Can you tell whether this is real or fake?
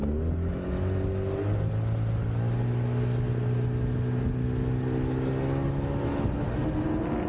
real